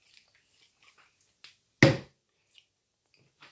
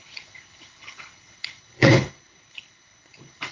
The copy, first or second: second